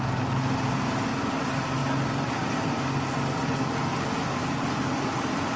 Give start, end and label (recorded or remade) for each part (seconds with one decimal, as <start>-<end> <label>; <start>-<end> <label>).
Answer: 0.0-5.6 recorded